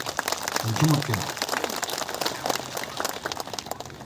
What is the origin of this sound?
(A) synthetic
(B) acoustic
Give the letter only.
B